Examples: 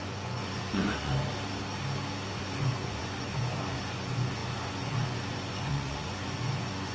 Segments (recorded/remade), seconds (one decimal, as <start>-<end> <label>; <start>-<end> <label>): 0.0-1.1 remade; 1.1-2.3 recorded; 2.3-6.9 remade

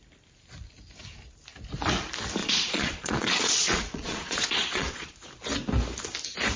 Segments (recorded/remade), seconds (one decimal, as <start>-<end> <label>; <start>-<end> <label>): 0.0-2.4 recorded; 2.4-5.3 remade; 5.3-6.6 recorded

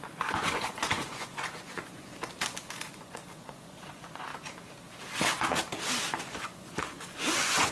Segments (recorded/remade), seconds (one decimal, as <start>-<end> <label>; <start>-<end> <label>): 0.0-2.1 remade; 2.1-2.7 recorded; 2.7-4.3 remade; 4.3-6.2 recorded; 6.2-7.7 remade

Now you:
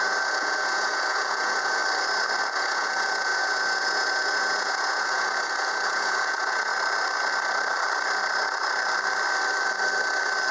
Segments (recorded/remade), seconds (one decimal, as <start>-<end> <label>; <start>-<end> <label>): 0.0-1.8 remade; 1.8-2.4 recorded; 2.4-6.7 remade; 6.7-10.5 recorded

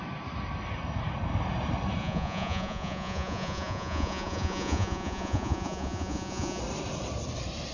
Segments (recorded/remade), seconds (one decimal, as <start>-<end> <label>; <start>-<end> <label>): 0.0-2.0 recorded; 2.0-6.6 remade; 6.6-7.7 recorded

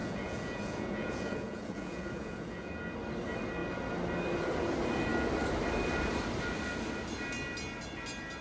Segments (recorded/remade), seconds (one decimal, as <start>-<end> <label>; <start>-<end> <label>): 0.0-2.7 remade; 2.7-8.4 recorded